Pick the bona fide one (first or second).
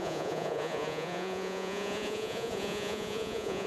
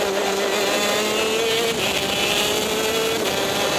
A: second